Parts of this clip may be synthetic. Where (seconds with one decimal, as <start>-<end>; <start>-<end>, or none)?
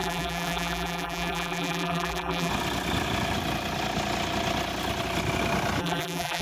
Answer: 0.0-2.5; 5.8-6.4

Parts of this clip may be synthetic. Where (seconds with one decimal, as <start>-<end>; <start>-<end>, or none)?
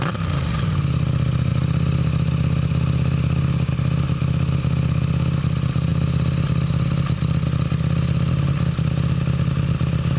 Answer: none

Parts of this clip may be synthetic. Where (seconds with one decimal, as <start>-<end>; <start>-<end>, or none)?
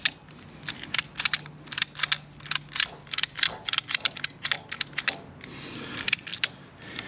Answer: none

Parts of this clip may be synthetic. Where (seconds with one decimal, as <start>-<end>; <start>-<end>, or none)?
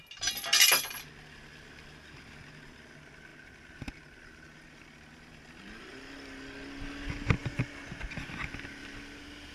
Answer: none